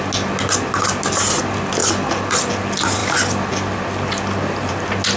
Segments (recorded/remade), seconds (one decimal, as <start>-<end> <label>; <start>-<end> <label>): 0.0-1.8 recorded; 1.8-2.5 remade; 2.5-5.2 recorded